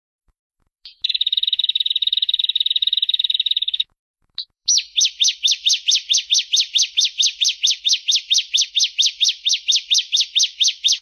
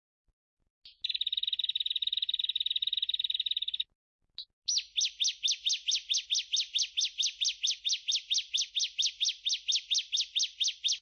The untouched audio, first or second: second